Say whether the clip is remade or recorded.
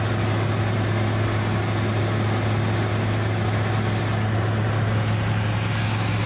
recorded